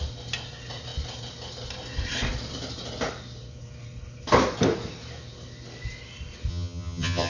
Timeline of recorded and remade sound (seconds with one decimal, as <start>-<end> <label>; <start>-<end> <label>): 0.0-6.5 recorded; 6.5-7.3 remade